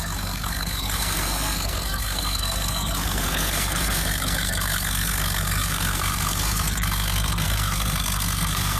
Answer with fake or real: fake